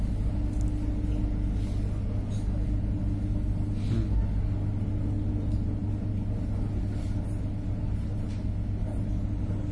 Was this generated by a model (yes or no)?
no